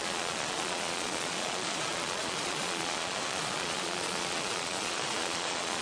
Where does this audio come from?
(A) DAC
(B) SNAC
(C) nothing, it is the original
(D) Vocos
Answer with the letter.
D